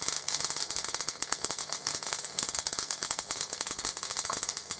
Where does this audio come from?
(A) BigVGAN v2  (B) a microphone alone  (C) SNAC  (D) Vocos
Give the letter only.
C